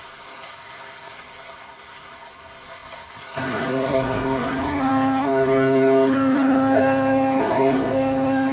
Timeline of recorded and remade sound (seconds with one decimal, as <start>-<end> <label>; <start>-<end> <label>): 0.0-8.5 remade